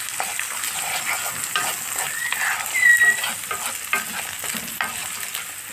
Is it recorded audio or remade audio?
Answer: recorded